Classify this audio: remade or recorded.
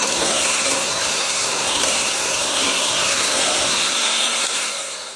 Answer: remade